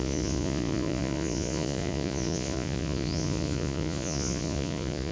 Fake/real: fake